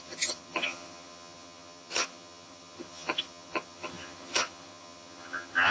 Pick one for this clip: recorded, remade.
remade